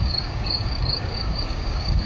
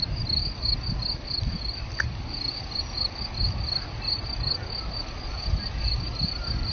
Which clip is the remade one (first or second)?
first